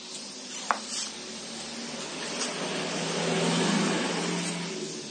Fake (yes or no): no